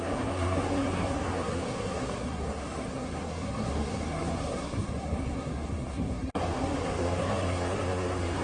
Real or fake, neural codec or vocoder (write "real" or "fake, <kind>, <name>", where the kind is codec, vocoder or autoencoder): fake, codec, SNAC